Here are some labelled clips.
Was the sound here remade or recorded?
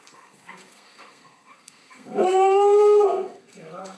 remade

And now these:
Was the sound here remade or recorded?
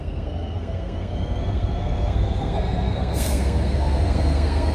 remade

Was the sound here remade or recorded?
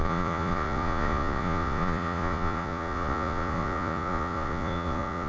remade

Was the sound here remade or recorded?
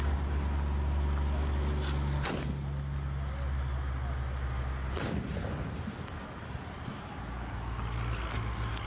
recorded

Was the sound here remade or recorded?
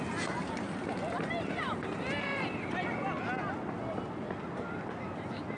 recorded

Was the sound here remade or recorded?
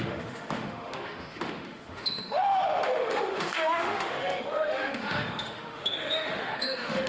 remade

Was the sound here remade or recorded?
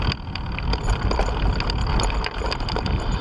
recorded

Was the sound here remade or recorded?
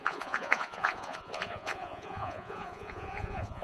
remade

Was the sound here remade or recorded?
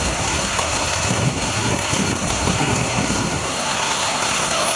remade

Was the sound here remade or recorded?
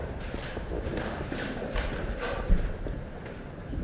remade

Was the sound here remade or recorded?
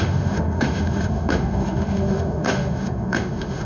remade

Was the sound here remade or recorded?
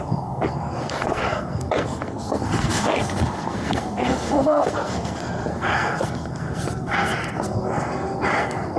remade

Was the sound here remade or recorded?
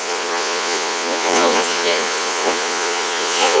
remade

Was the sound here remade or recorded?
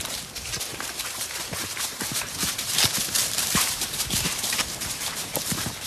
remade